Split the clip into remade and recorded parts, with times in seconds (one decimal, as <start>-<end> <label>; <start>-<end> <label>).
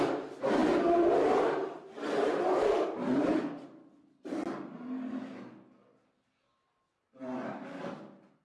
0.0-8.4 recorded